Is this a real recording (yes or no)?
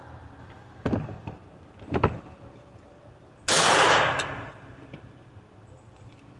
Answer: yes